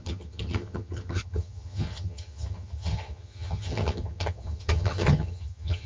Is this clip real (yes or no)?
no